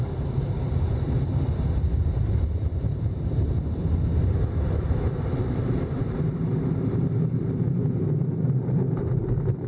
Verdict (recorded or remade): remade